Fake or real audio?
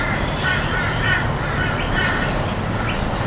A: real